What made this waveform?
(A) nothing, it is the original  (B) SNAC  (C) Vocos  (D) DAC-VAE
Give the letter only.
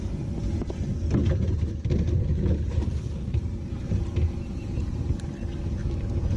A